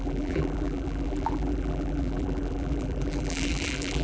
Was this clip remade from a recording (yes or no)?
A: yes